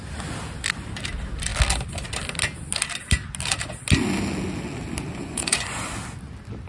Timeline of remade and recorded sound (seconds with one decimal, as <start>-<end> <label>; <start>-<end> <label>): 0.0-5.2 recorded; 5.2-5.8 remade; 5.8-6.7 recorded